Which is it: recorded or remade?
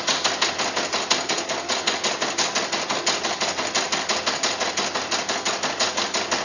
recorded